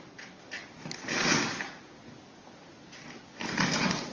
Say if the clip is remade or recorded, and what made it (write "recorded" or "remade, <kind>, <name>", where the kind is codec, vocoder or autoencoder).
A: recorded